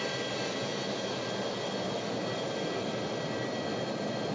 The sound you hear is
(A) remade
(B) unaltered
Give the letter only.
B